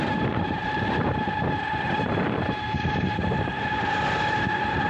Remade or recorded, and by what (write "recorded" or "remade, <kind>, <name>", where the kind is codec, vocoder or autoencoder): remade, vocoder, BigVGAN v2